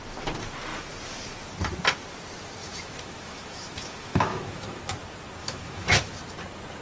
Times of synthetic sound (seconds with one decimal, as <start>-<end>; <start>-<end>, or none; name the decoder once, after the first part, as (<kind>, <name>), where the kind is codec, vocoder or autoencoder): 2.6-4.8 (autoencoder, DAC-VAE); 5.4-6.2